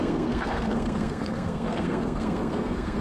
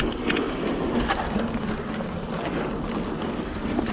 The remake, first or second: first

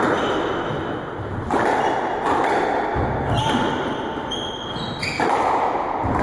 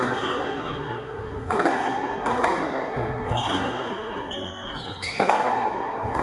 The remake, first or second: second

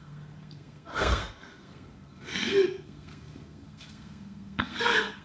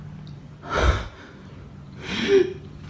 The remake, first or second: first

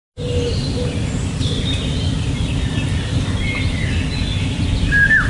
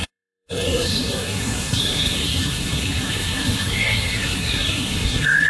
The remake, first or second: second